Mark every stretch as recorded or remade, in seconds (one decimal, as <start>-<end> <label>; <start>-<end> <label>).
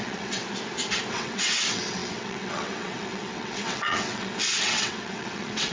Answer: 0.0-0.4 remade; 0.4-1.1 recorded; 1.1-5.7 remade